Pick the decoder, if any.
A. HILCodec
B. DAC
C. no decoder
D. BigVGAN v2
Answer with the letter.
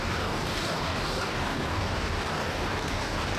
B